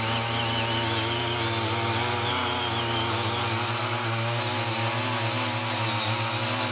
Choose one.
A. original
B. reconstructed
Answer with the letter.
A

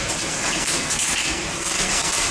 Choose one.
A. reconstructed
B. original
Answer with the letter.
A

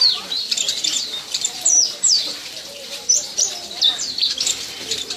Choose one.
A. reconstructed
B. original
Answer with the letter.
A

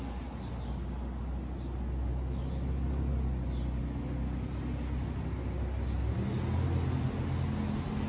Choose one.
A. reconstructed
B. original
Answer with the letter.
B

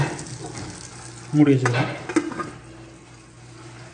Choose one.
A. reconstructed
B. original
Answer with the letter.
B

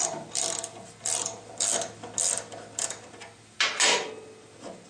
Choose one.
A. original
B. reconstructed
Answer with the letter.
A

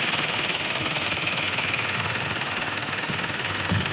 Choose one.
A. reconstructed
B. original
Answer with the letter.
A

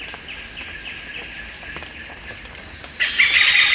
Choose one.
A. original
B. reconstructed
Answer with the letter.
A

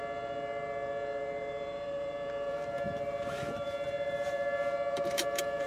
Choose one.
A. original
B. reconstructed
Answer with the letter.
B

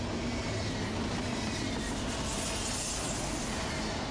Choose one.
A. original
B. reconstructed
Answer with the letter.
A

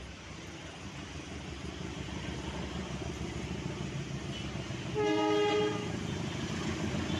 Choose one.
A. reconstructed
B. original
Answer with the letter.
B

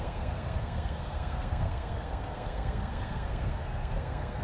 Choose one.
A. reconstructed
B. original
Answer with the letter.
A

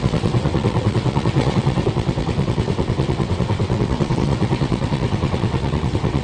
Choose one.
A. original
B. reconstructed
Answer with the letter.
B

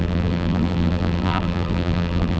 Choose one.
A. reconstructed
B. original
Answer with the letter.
A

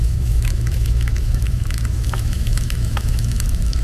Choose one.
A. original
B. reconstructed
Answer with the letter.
B